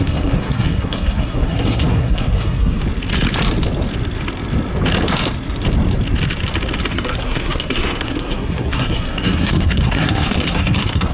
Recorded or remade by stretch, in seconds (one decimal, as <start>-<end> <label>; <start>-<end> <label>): 0.0-2.8 remade; 2.8-6.9 recorded; 6.9-11.1 remade